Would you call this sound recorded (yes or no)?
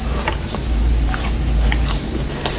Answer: no